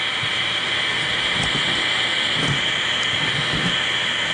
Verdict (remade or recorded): recorded